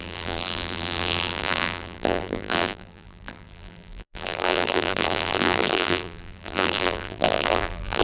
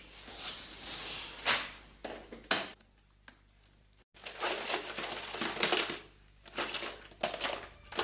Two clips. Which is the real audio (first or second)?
second